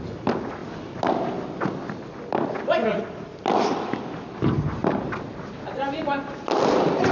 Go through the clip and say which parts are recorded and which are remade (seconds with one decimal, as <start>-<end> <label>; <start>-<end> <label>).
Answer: 0.0-7.1 recorded